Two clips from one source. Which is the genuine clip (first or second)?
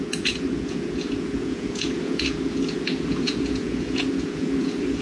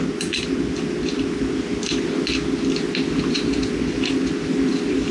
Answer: second